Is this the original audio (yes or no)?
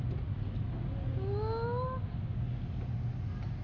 yes